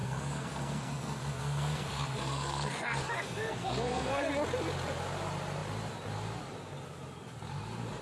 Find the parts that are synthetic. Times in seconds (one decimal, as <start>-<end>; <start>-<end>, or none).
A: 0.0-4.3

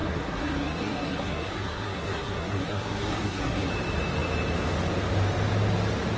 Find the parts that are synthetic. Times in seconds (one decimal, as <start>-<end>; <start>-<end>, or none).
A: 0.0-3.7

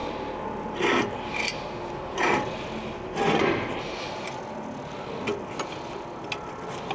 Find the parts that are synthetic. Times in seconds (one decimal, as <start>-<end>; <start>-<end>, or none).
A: none